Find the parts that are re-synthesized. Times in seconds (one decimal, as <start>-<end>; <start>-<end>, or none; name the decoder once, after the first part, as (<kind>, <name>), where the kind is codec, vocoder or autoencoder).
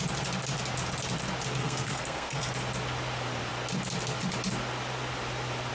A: 1.6-2.5 (codec, SNAC)